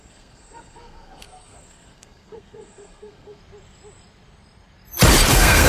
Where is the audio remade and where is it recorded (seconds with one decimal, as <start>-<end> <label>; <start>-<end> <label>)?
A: 0.0-3.4 remade; 3.4-5.3 recorded; 5.3-5.7 remade